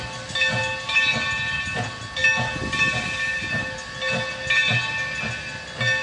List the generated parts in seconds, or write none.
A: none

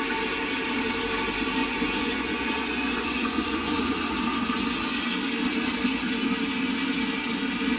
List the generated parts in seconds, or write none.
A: 1.6-4.0 (vocoder, Vocos)

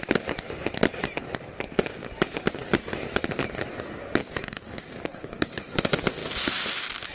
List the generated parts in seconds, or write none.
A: 4.2-5.5 (codec, DAC)

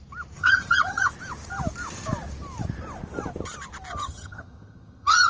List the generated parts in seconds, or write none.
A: 0.4-1.1 (vocoder, HiFi-GAN); 3.9-5.3

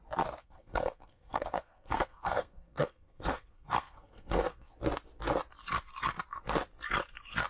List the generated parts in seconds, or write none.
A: 0.4-4.7 (codec, SNAC)